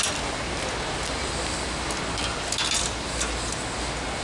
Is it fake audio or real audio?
real